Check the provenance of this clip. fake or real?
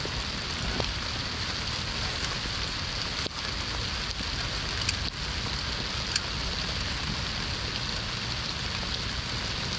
real